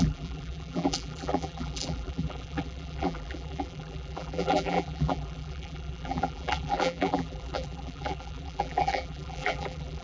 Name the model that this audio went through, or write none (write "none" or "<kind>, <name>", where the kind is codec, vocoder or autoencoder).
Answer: vocoder, BigVGAN v2